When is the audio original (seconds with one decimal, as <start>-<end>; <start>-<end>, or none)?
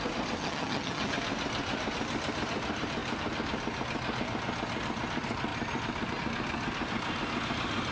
0.0-0.4; 1.1-7.9